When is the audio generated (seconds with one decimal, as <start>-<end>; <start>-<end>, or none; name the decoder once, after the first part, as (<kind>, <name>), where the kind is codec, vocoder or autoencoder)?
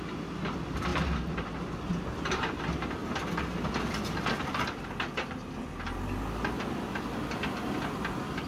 none